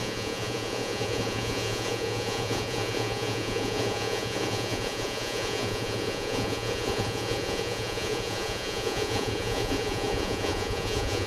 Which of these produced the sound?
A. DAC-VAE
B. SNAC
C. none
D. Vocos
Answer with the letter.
D